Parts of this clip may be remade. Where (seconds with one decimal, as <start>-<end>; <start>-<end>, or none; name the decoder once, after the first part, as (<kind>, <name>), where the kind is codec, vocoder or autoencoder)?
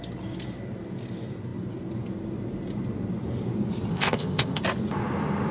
3.9-4.6 (codec, ZipCodec)